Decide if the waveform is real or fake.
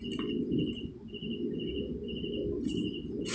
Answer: real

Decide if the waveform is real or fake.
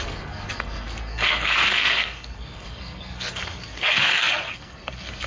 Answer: fake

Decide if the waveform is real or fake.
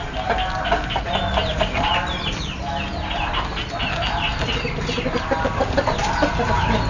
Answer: real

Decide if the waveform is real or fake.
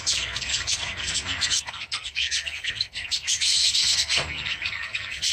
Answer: fake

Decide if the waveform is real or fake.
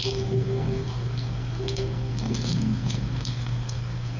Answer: fake